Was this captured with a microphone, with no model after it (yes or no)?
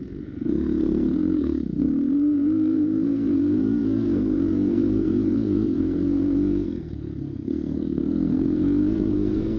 no